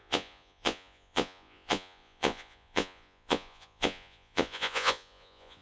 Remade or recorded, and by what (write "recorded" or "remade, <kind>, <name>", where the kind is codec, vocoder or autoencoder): remade, vocoder, Vocos